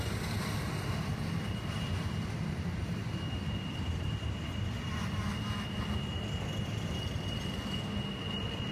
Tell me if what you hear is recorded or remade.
recorded